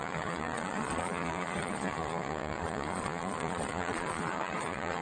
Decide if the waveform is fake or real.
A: fake